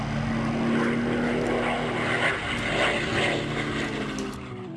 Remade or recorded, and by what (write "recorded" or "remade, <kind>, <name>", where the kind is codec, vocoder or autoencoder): recorded